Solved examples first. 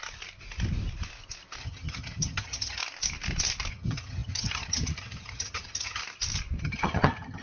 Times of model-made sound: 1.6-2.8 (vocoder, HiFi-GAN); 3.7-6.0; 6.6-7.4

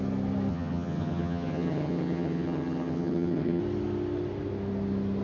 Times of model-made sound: 0.5-3.6 (vocoder, HiFi-GAN)

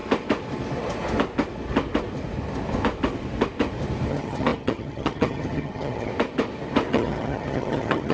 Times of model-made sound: 4.1-6.1 (vocoder, HiFi-GAN); 6.9-8.1

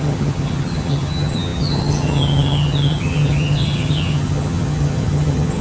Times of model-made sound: 0.0-5.6 (vocoder, HiFi-GAN)

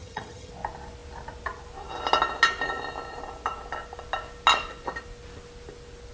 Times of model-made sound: 0.0-0.5 (vocoder, HiFi-GAN)

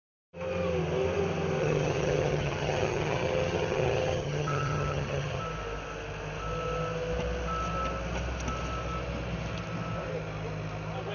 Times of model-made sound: 1.6-5.4 (vocoder, HiFi-GAN)

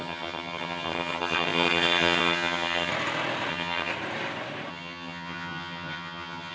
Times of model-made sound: 0.0-2.9 (vocoder, HiFi-GAN); 3.5-3.9; 4.7-6.5